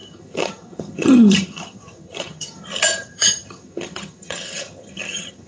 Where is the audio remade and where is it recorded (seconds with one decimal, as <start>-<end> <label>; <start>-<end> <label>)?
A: 0.0-5.5 remade